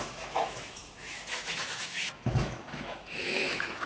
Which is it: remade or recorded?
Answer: remade